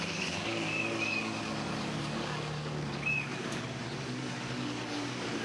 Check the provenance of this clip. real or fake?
fake